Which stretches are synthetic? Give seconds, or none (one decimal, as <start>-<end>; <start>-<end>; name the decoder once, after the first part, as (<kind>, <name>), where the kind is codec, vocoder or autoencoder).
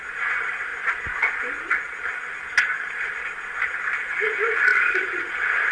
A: 4.7-5.3 (vocoder, BigVGAN v2)